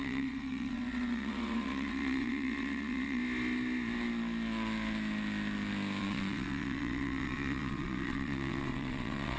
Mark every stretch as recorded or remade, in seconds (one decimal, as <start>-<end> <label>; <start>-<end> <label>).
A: 0.0-3.2 remade; 3.2-6.0 recorded; 6.0-9.4 remade